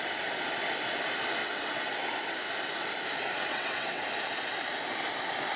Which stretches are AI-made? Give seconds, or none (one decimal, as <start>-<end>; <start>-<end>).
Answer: 1.4-2.1; 3.5-4.0